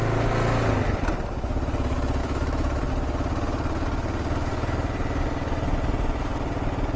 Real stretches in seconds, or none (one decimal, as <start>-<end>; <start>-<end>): 0.0-2.2; 2.9-7.0